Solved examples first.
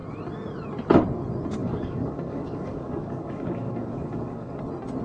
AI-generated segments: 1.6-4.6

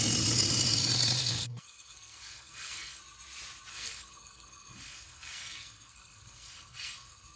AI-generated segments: 1.2-3.0; 3.7-7.4

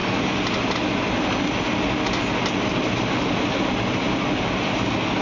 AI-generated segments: none

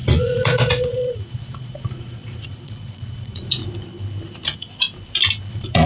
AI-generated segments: 0.0-3.6; 5.5-5.9

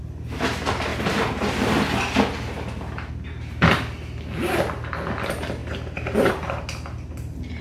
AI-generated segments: 5.6-6.3

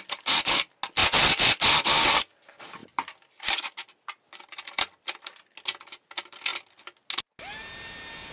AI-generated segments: 1.0-1.6; 2.8-3.9

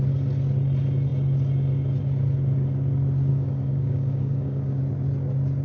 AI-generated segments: 3.3-4.8